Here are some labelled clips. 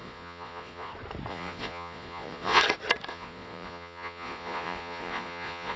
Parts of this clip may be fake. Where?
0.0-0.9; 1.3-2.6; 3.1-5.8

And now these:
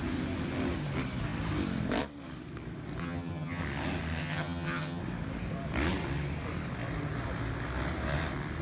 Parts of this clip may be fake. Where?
3.0-3.6; 4.2-5.0

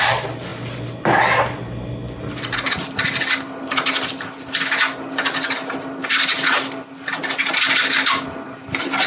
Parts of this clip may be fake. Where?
none